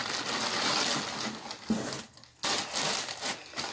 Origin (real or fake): real